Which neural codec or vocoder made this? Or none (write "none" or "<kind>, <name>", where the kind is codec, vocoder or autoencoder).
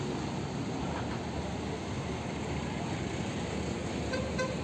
none